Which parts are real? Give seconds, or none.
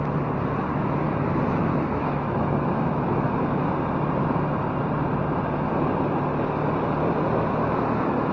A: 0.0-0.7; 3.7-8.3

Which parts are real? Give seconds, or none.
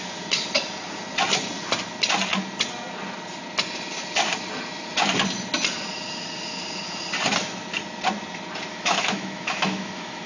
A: 0.0-8.7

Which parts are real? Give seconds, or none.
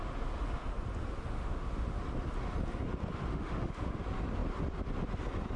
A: 0.0-1.1; 2.0-3.3; 4.0-5.6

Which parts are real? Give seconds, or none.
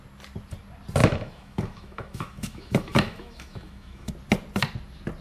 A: 0.0-1.0; 4.1-5.2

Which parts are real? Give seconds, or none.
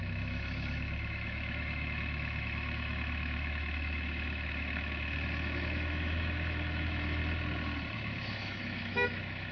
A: 7.2-7.9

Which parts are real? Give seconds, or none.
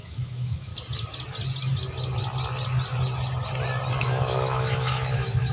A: 0.7-4.0